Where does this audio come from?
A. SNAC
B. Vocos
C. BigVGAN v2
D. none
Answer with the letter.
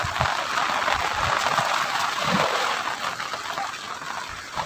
D